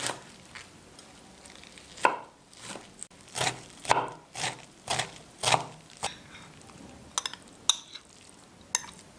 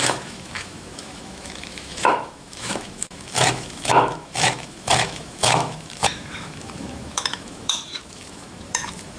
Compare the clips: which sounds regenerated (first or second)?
second